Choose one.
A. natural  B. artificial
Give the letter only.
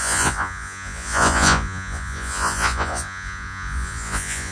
B